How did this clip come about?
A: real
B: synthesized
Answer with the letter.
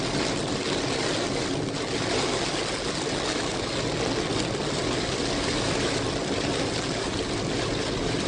A